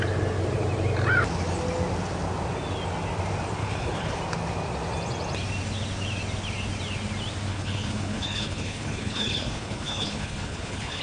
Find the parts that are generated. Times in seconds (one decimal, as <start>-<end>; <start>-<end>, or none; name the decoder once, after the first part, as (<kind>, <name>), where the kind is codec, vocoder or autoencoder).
3.6-4.2 (codec, HILCodec); 7.5-11.0